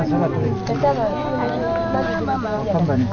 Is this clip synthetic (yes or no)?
no